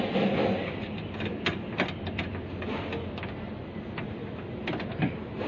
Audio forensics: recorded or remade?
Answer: remade